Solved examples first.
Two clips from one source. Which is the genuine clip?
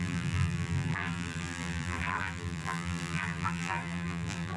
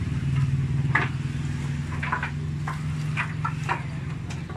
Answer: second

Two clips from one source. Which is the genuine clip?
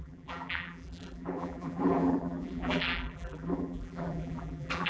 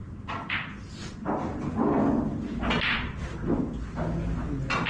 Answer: second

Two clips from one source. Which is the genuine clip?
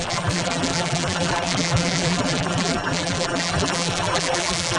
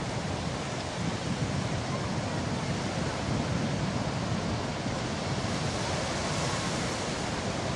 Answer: second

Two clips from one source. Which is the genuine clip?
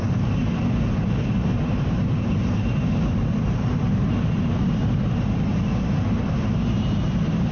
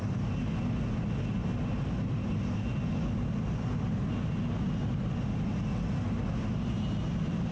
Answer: second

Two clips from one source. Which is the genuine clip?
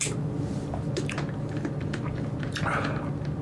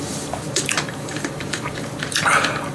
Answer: first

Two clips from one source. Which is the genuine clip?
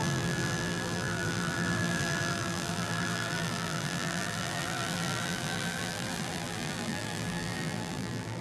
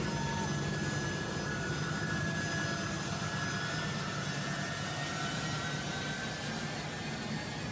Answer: second